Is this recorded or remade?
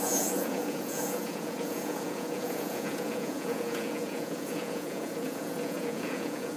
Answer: remade